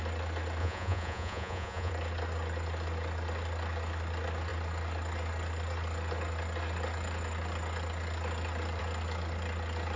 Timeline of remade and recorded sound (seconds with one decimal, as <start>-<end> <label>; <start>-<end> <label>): 0.0-0.6 recorded; 0.6-1.9 remade; 1.9-10.0 recorded